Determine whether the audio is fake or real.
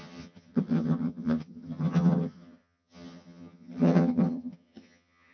fake